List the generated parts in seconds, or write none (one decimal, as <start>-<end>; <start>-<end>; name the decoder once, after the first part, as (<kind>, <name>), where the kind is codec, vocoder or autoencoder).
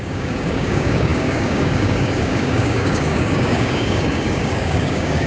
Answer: 0.0-5.3 (codec, DAC)